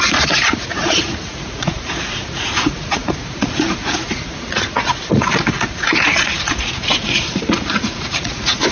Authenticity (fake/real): fake